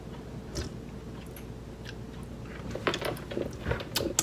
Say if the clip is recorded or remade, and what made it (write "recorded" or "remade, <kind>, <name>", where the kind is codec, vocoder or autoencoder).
recorded